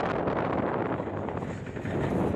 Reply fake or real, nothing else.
real